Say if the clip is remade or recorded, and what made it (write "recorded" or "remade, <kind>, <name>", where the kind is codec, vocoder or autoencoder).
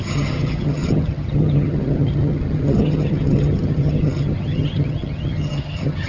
remade, vocoder, HiFi-GAN